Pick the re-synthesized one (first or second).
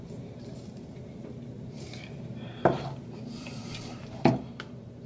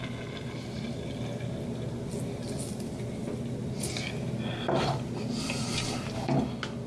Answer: first